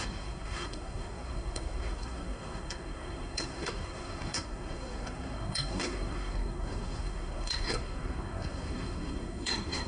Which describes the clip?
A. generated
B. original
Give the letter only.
A